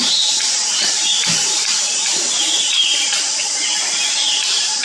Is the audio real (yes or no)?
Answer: no